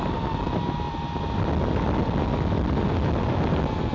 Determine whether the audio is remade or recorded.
recorded